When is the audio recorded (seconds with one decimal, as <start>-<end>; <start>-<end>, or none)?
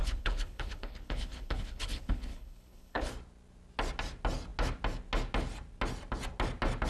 3.1-6.9